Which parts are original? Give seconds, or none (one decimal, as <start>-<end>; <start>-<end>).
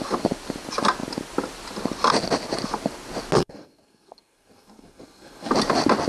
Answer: 0.0-3.4; 5.5-6.1